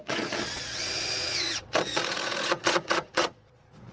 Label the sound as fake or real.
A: fake